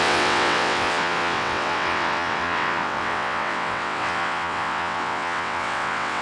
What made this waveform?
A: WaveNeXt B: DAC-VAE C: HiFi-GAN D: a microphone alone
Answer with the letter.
A